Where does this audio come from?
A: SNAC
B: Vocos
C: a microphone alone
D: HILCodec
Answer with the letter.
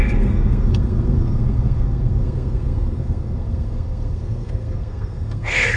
A